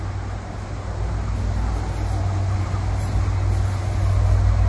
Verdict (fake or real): real